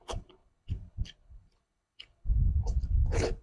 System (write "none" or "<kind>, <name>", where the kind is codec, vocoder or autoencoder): codec, HILCodec